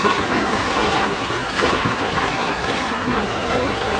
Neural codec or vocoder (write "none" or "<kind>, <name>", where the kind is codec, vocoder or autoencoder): codec, SNAC